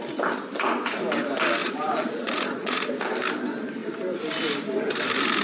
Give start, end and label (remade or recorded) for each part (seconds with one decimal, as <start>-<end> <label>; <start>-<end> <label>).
0.0-1.6 recorded; 1.6-2.9 remade; 2.9-5.4 recorded